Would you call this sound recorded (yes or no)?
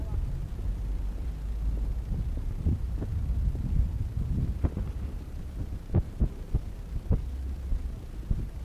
yes